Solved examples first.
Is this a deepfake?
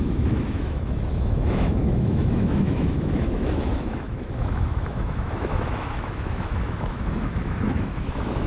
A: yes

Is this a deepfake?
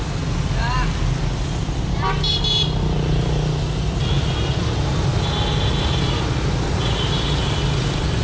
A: no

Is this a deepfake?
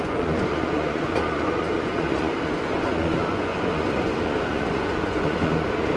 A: yes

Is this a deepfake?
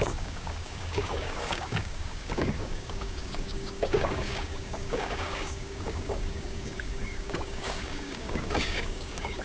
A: yes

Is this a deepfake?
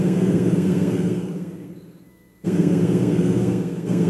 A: yes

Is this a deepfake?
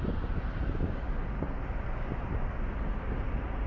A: no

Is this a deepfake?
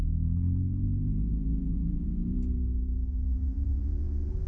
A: yes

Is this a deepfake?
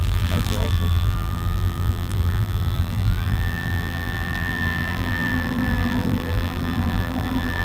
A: yes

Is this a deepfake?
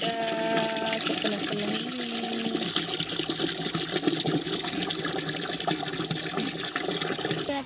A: no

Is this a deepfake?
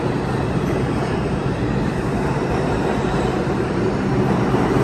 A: yes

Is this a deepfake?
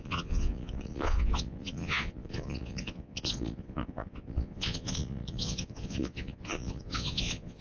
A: yes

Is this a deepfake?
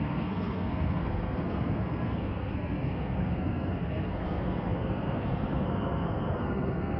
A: yes